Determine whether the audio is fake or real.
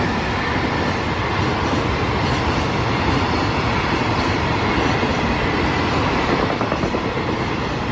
real